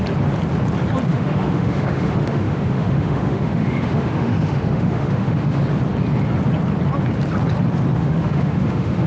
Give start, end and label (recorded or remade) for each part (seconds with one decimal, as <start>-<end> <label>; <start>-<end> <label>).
0.0-1.1 recorded; 1.1-5.6 remade; 5.6-8.0 recorded; 8.0-9.1 remade